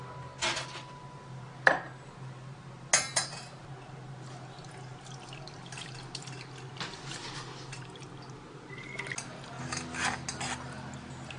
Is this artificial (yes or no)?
no